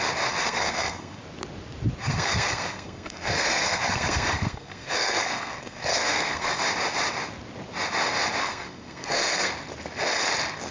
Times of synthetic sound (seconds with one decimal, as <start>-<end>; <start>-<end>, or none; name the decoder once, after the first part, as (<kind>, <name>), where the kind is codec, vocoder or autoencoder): 0.4-1.2 (codec, SNAC); 2.0-6.6; 8.4-9.5